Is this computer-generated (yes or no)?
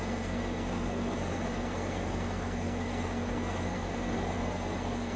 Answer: yes